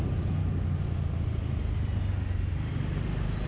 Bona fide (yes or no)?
yes